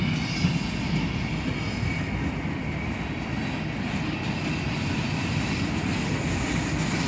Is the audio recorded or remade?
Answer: recorded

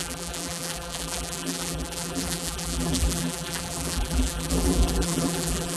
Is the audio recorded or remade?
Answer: remade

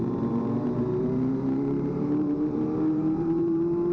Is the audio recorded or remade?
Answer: remade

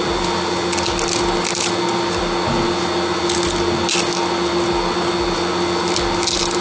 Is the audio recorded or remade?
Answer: recorded